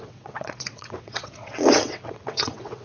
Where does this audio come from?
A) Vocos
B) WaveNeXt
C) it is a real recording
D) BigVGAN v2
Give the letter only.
B